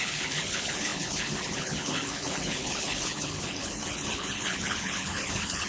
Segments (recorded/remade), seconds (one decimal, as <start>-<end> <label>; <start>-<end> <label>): 0.0-5.7 remade